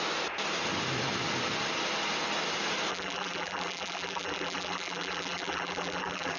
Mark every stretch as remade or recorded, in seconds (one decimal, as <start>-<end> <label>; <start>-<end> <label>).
0.0-2.9 recorded; 2.9-6.4 remade